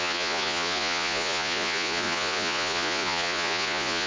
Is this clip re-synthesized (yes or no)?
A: yes